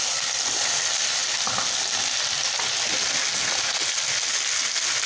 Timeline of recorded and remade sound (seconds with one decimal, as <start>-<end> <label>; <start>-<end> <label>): 0.0-5.1 recorded

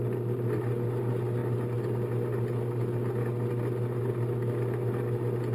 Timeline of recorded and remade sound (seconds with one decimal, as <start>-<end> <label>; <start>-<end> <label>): 0.0-5.5 recorded

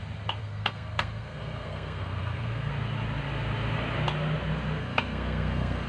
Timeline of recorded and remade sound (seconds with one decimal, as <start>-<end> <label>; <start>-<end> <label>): 0.0-0.4 recorded; 0.4-2.7 remade; 2.7-4.8 recorded; 4.8-5.9 remade

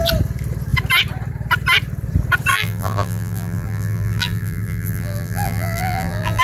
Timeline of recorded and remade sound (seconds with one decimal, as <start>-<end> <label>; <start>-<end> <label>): 0.0-2.5 recorded; 2.5-6.4 remade

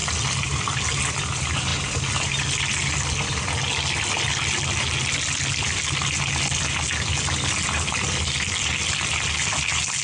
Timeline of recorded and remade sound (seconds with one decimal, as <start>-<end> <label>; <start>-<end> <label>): 0.0-10.0 recorded

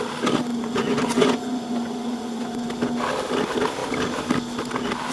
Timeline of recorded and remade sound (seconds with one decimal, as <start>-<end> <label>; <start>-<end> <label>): 0.0-0.5 recorded; 0.5-2.7 remade; 2.7-5.1 recorded

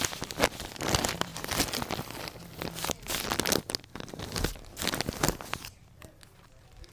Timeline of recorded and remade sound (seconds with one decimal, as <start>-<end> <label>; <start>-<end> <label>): 0.0-6.9 recorded